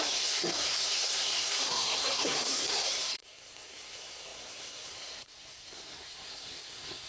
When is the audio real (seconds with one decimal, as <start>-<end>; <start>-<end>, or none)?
none